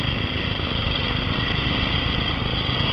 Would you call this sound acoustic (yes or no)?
yes